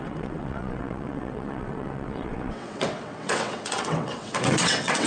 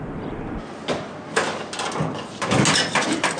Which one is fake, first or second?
first